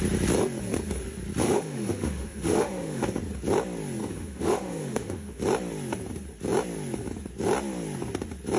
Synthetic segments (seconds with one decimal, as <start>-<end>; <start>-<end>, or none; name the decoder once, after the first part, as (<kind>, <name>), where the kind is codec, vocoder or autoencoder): 1.4-3.2 (autoencoder, DAC-VAE); 4.0-5.4